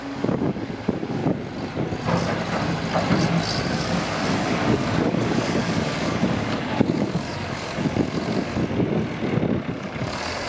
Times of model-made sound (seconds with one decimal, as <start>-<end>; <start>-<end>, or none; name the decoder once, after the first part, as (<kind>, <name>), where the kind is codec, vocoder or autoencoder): 0.0-1.2 (codec, DAC); 3.7-8.6; 9.7-10.5

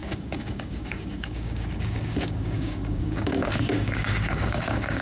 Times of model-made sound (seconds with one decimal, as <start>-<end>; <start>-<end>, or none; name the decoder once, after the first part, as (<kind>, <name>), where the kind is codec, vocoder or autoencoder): 0.0-5.0 (codec, DAC)

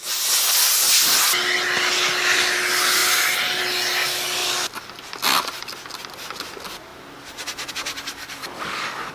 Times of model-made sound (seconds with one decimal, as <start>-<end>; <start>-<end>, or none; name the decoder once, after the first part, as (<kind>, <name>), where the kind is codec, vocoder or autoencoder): 8.2-9.1 (codec, DAC)

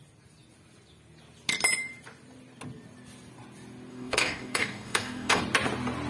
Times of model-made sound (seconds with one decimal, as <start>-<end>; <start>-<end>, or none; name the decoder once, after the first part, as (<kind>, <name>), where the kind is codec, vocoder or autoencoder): 3.9-5.4 (codec, DAC)

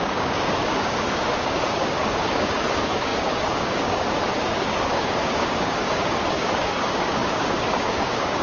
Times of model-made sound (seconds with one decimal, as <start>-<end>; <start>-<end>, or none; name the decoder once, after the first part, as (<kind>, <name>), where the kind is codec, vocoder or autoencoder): 0.0-8.4 (codec, DAC)

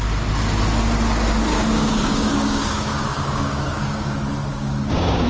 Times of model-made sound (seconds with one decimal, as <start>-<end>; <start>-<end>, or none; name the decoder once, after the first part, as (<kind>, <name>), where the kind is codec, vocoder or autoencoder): 1.5-4.1 (codec, DAC); 4.5-5.3

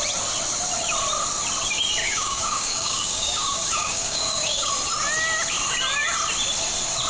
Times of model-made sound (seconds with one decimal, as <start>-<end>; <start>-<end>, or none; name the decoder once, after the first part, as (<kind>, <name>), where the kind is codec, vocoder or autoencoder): 2.0-4.7 (codec, DAC)